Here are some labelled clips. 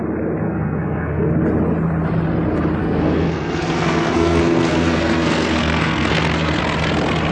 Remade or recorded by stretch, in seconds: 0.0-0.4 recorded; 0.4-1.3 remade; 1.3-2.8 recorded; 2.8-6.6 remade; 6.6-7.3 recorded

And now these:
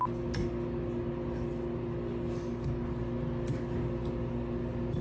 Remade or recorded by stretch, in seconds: 0.0-5.0 recorded

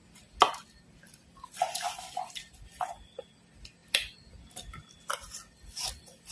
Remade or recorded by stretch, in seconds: 0.0-6.3 recorded

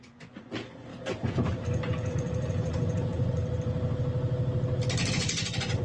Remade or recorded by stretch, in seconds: 0.0-0.9 remade; 0.9-2.1 recorded; 2.1-3.4 remade; 3.4-5.1 recorded; 5.1-5.8 remade